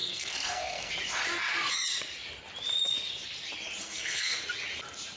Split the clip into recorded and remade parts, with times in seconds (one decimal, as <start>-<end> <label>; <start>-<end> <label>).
0.0-0.9 remade; 0.9-3.8 recorded; 3.8-4.4 remade; 4.4-5.2 recorded